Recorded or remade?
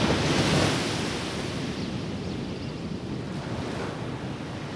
recorded